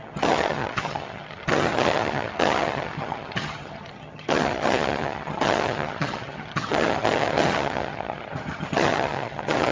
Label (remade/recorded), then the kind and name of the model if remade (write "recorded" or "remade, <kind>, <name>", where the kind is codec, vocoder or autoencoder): remade, vocoder, HiFi-GAN